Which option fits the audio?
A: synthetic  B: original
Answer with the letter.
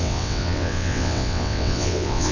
A